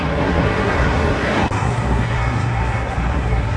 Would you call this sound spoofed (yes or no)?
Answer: yes